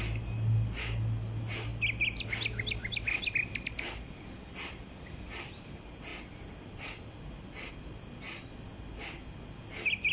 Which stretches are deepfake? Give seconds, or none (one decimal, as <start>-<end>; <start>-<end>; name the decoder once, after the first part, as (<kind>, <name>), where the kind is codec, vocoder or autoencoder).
none